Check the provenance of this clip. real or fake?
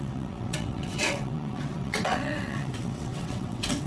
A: fake